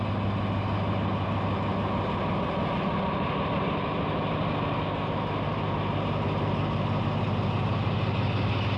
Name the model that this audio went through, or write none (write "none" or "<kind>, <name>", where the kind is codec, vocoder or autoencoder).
none